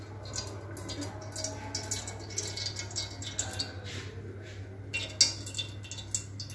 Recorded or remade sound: recorded